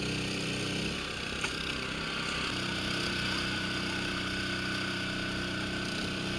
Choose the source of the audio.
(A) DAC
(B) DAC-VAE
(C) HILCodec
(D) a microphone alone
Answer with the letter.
D